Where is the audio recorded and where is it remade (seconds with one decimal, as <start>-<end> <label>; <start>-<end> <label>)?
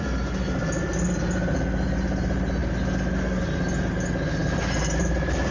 0.0-5.5 recorded